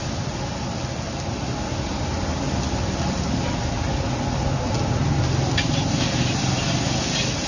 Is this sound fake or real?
real